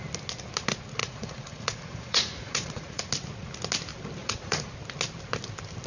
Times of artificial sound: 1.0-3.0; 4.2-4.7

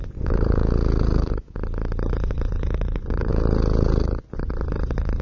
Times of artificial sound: 0.0-0.6; 2.1-3.3; 4.2-5.2

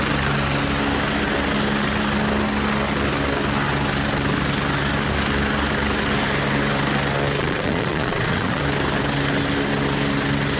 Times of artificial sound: 7.4-8.6